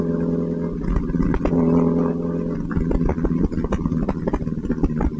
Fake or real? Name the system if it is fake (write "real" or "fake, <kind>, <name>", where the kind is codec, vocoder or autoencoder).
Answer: real